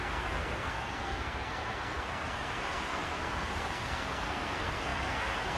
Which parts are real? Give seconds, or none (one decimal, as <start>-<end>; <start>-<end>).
none